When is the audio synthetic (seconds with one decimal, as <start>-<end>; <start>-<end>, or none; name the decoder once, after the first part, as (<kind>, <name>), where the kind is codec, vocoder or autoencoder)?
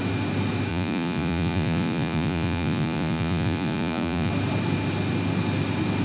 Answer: 0.7-4.3 (vocoder, Vocos)